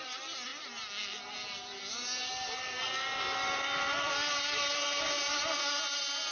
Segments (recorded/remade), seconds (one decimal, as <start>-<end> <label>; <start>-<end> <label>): 0.0-6.3 recorded